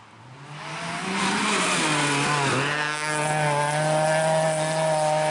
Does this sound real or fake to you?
real